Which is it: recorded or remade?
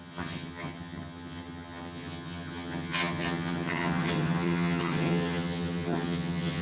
remade